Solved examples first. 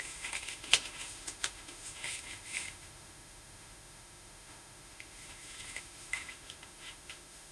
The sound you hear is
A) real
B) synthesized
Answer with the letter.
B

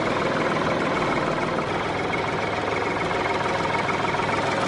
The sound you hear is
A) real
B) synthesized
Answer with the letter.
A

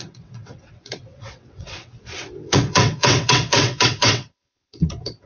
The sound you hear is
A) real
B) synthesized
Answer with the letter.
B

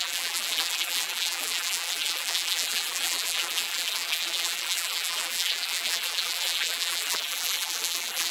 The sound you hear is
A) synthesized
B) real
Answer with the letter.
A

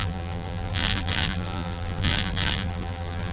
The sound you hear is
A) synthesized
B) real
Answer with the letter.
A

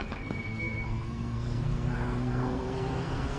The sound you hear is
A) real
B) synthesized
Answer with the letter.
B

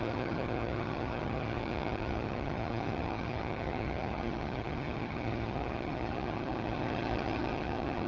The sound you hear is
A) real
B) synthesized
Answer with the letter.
B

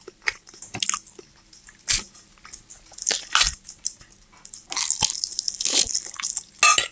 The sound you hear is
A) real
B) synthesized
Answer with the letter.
A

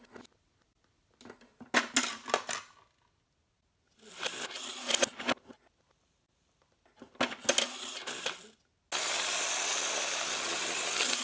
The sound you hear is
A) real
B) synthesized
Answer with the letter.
A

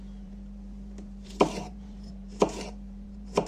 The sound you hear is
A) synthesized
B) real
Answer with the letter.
A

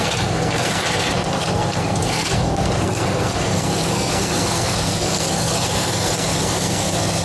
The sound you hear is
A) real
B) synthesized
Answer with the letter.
B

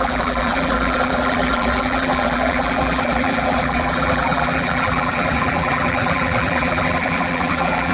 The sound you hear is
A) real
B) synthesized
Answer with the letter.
B